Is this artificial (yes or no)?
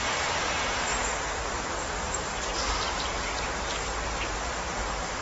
yes